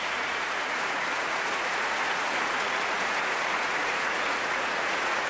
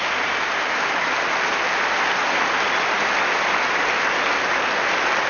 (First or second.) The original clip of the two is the second